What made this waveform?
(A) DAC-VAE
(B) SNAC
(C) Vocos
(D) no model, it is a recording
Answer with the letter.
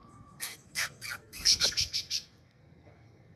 B